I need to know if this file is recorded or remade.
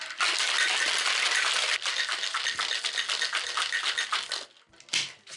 recorded